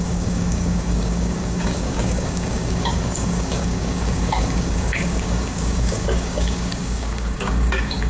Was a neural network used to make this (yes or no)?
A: yes